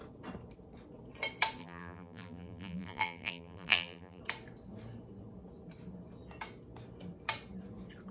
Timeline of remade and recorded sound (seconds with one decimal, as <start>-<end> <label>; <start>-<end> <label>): 0.0-1.6 recorded; 1.6-4.2 remade; 4.2-8.1 recorded